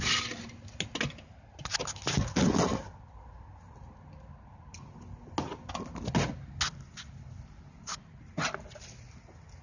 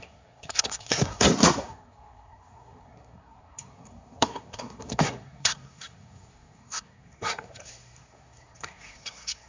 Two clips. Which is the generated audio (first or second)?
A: second